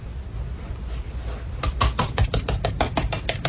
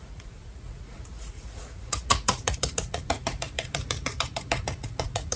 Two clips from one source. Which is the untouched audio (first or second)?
first